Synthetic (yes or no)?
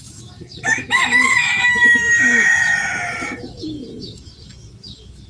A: yes